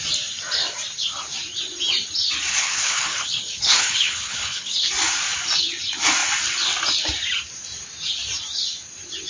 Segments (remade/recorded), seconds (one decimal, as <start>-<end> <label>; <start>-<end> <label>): 0.0-2.5 recorded; 2.5-4.9 remade; 4.9-9.3 recorded